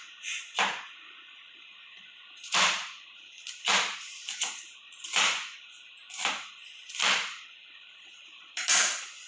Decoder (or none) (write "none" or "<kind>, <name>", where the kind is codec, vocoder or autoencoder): vocoder, BigVGAN v2